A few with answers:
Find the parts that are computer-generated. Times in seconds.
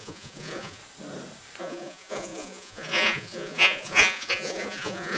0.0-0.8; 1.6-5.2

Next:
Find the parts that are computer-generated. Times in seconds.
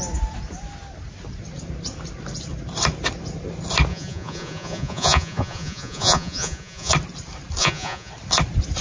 3.9-6.9; 7.6-8.1